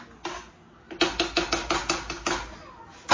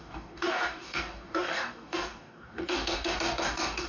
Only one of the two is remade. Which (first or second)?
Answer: second